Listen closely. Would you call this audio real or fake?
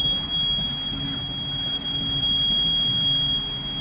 real